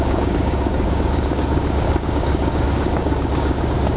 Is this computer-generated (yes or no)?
yes